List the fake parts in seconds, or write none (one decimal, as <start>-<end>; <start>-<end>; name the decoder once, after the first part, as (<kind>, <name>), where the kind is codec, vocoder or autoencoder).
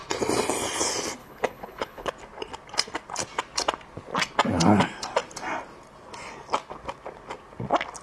1.2-2.1 (codec, HILCodec)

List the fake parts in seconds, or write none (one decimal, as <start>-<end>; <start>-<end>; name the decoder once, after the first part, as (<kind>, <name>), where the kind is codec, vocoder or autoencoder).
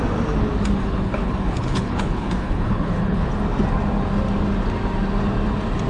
0.8-3.3 (codec, HILCodec)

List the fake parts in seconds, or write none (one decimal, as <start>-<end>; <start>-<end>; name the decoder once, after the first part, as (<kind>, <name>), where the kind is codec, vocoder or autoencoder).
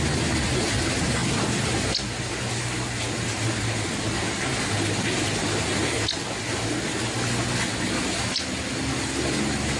none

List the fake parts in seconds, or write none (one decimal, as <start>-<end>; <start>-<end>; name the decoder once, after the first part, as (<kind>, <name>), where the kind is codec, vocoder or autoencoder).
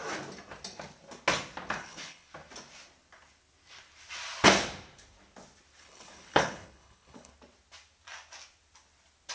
1.8-2.3 (codec, HILCodec); 5.8-7.3